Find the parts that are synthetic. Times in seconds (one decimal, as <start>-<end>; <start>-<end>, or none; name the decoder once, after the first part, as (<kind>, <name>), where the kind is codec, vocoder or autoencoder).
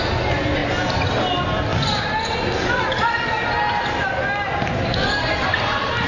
none